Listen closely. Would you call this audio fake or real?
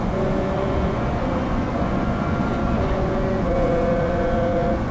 fake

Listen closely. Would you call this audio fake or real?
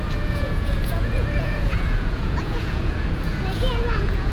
fake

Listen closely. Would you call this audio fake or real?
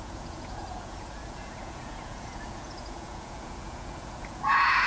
fake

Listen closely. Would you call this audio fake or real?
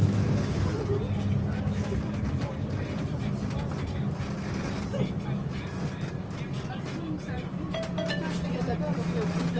real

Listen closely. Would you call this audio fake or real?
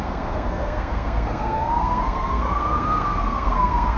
fake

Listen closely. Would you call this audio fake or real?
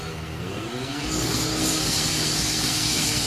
fake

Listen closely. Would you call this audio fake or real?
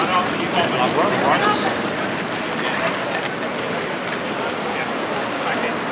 real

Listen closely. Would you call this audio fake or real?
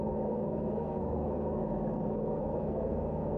fake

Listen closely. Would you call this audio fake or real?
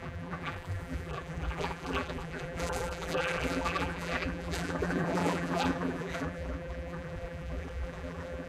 fake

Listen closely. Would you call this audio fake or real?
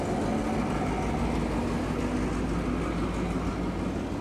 real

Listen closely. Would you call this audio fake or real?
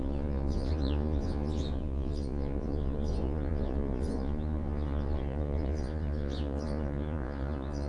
fake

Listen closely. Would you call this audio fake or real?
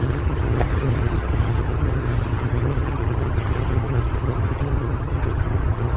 fake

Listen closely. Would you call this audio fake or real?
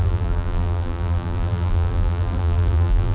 fake